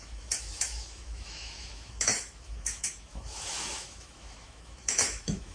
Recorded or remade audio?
remade